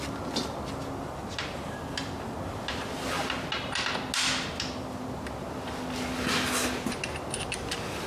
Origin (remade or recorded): recorded